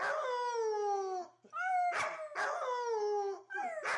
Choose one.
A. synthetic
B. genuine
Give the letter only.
B